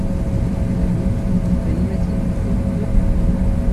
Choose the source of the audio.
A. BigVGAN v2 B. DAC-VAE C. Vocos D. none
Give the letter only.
D